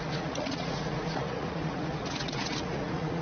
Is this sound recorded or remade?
remade